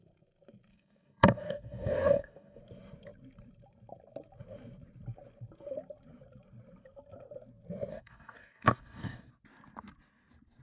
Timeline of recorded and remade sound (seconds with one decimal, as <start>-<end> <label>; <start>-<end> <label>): 0.0-0.7 recorded; 0.7-2.6 remade; 2.6-7.9 recorded; 7.9-9.3 remade; 9.3-10.6 recorded